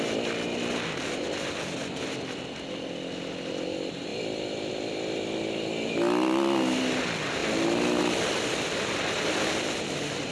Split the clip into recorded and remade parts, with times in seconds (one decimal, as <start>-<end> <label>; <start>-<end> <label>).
0.0-10.3 recorded